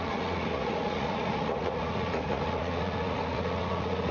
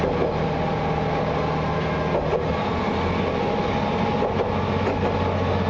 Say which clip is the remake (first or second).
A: first